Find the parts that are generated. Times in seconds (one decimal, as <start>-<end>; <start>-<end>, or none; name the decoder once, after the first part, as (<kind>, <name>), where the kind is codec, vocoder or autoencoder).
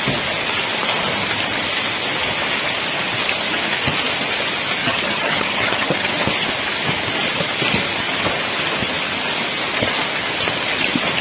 4.8-6.1 (vocoder, HiFi-GAN)